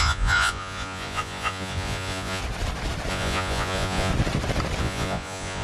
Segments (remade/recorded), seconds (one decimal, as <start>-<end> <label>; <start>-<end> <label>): 0.0-2.4 remade; 2.4-3.1 recorded; 3.1-4.1 remade; 4.1-4.8 recorded; 4.8-5.6 remade